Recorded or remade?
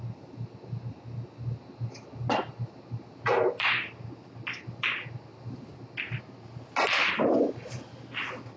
recorded